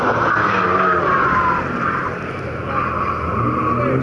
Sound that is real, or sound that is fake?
real